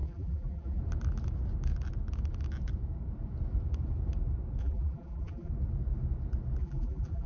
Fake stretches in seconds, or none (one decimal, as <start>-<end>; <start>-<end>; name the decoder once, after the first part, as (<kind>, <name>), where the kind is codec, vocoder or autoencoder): 0.0-0.8 (vocoder, BigVGAN v2); 4.6-5.5; 6.6-7.3